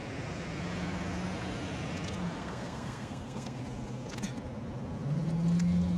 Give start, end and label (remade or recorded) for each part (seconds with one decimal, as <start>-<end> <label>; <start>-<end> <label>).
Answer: 0.0-2.4 recorded; 2.4-3.6 remade; 3.6-6.0 recorded